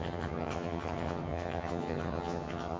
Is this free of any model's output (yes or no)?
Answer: no